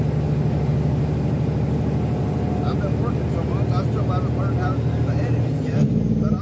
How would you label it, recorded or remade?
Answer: recorded